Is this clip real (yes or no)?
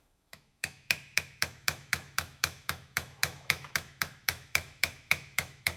no